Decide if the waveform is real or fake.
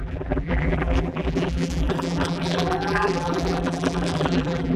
fake